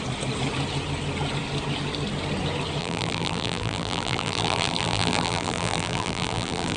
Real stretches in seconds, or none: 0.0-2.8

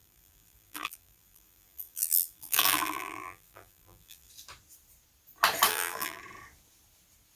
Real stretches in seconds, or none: 4.3-5.7; 6.2-7.3

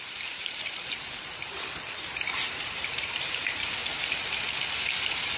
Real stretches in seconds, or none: 3.8-4.7

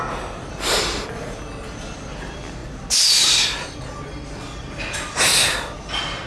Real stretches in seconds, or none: 0.0-6.3

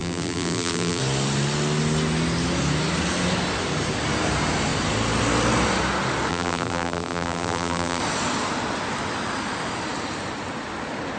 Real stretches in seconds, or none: 1.0-6.3; 8.0-11.2

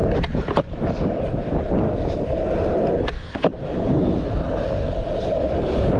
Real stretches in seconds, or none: 0.0-3.5; 4.4-6.0

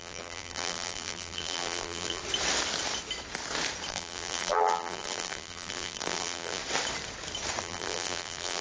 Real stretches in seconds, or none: 2.2-3.9; 6.6-7.6

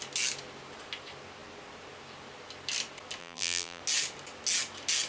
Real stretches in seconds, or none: 0.0-3.2; 3.8-5.1